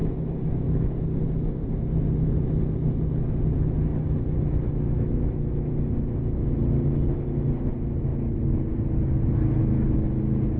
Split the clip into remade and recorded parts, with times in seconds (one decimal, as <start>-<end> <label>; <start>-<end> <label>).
0.0-10.6 recorded